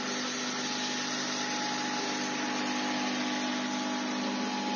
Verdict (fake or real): real